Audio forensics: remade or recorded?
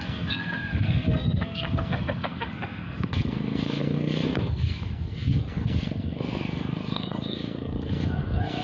remade